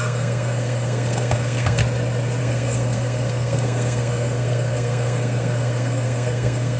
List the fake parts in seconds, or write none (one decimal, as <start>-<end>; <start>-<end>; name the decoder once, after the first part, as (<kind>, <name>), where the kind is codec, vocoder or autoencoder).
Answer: 0.0-1.8 (codec, SNAC); 2.4-6.8